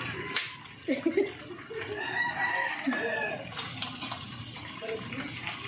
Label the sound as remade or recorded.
remade